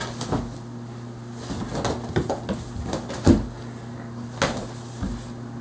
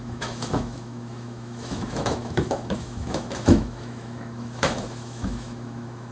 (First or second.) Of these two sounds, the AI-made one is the second